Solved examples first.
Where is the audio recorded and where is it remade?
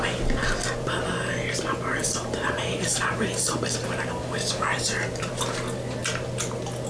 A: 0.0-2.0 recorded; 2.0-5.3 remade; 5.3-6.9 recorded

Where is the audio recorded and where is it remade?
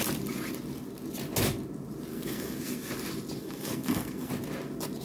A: 0.0-2.1 recorded; 2.1-2.9 remade; 2.9-3.4 recorded; 3.4-4.3 remade; 4.3-5.0 recorded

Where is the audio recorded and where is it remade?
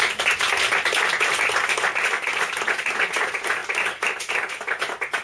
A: 0.0-5.2 recorded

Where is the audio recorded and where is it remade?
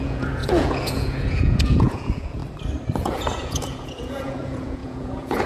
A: 0.0-2.4 remade; 2.4-3.0 recorded; 3.0-5.5 remade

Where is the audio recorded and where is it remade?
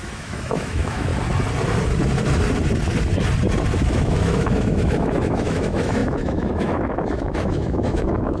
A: 0.0-1.1 remade; 1.1-3.9 recorded; 3.9-8.4 remade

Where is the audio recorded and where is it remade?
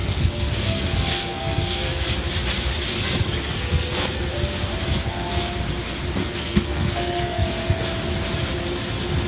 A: 0.0-2.1 remade; 2.1-2.9 recorded; 2.9-4.2 remade; 4.2-6.2 recorded; 6.2-7.8 remade; 7.8-9.3 recorded